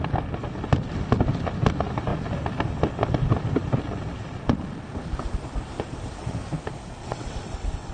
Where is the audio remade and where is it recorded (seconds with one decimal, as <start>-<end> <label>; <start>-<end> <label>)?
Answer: 0.0-7.0 recorded; 7.0-7.9 remade